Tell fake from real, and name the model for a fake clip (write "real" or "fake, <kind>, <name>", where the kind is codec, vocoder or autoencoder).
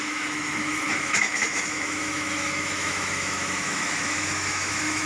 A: fake, autoencoder, DAC-VAE